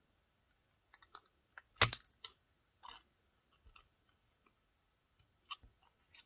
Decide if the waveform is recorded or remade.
recorded